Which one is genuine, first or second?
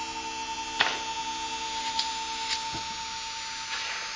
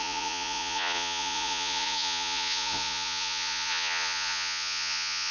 first